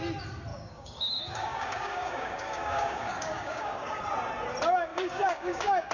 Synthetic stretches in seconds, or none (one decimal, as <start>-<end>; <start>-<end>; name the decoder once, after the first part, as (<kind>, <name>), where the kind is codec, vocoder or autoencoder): 0.5-4.0 (codec, DAC); 4.9-5.9

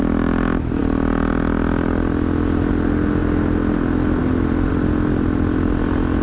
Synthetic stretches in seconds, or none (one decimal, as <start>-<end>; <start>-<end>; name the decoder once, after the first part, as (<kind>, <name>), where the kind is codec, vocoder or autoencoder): none

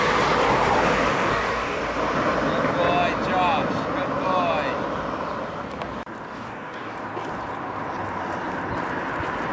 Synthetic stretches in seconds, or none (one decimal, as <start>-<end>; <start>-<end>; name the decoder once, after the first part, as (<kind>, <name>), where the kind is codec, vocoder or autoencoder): 1.1-1.8 (codec, DAC); 6.3-6.9